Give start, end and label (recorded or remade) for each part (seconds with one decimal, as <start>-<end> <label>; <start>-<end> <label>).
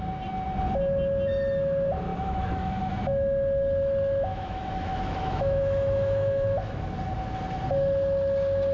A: 0.0-2.1 recorded; 2.1-2.9 remade; 2.9-4.3 recorded; 4.3-6.8 remade; 6.8-8.7 recorded